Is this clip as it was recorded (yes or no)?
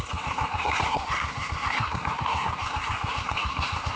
no